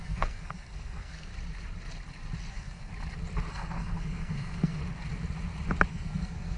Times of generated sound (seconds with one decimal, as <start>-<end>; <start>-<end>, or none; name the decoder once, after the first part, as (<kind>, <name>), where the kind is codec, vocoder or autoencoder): 0.0-1.3 (codec, SNAC); 2.5-2.9; 3.5-4.8; 5.9-6.6